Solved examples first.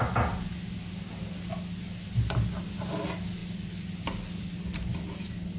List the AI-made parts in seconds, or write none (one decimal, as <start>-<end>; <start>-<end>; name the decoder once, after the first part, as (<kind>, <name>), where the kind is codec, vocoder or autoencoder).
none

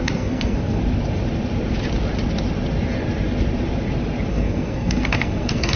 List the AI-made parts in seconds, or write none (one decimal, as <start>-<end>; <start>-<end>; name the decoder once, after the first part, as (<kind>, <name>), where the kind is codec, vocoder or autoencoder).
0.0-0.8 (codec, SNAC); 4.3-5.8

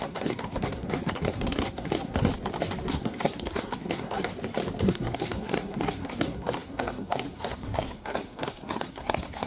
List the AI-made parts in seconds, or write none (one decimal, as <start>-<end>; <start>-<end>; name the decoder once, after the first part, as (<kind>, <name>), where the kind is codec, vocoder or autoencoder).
0.0-2.3 (codec, SNAC); 2.9-4.3; 4.8-9.5

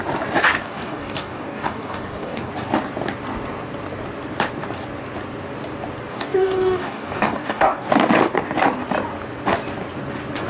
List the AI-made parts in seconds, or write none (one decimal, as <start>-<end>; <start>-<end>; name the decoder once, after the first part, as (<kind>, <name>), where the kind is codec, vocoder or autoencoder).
0.6-2.5 (codec, DAC); 6.1-7.9

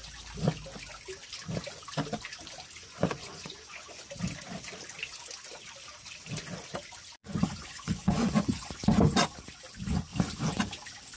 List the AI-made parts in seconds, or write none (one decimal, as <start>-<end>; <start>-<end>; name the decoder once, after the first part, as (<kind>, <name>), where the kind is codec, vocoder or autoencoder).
2.8-4.0 (vocoder, Vocos); 7.2-8.7

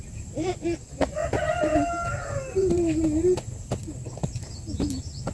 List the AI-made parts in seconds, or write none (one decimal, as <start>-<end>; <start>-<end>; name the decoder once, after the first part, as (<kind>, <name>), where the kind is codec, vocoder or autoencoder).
none